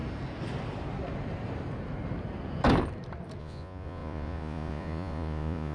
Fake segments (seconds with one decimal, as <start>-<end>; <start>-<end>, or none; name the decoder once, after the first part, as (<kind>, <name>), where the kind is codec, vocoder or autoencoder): 3.4-5.7 (vocoder, Vocos)